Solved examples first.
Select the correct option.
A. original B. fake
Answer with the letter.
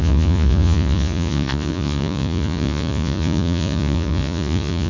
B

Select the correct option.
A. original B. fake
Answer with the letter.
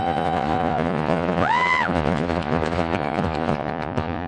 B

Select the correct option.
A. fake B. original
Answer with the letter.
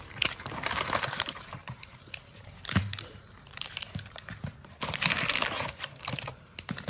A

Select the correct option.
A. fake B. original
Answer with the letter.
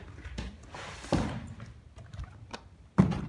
B